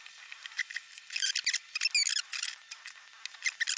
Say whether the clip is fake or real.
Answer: real